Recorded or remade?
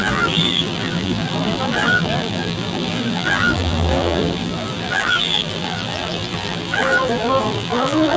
remade